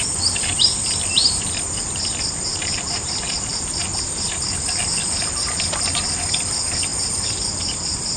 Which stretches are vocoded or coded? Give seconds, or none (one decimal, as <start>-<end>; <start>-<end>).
2.5-4.8